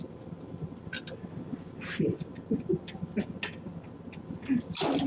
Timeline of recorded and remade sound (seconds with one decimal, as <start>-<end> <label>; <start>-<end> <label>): 0.0-5.1 recorded